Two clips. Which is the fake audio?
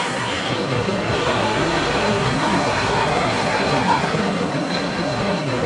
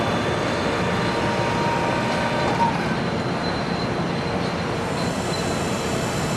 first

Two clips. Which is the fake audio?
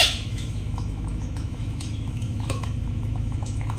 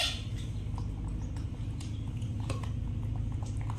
first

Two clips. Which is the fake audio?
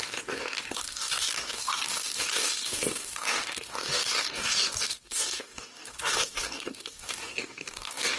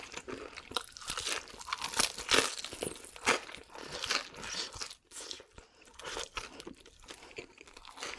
first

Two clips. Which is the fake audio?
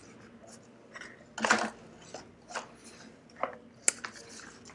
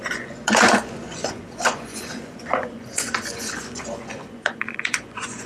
second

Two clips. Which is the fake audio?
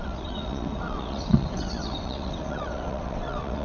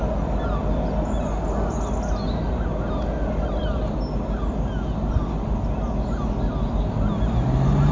first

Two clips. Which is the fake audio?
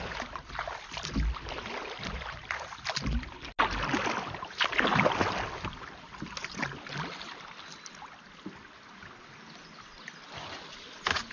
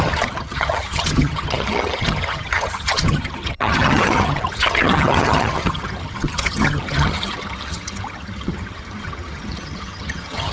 second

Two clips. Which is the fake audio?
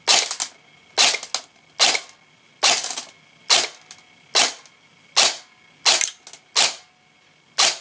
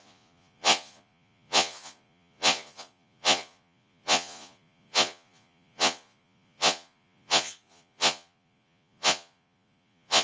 second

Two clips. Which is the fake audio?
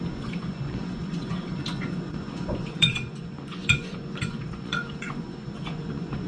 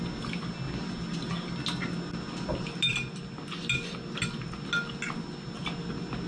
first